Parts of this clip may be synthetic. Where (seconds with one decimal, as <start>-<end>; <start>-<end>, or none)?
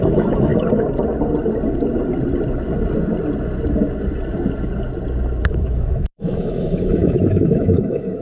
0.0-0.5; 5.4-8.2